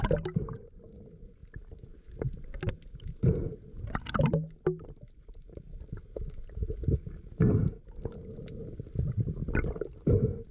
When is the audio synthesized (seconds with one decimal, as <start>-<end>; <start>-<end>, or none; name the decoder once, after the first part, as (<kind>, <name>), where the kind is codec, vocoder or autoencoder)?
none